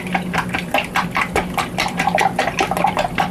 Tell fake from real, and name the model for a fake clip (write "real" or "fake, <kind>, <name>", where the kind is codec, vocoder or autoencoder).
real